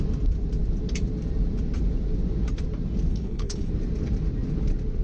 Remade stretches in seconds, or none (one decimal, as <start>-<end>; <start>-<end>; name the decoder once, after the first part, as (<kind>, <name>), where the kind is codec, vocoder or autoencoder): 3.1-3.7 (codec, HILCodec)